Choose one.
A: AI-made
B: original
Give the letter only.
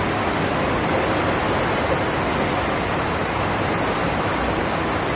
B